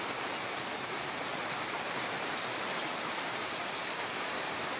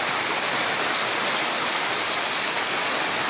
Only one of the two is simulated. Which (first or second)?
first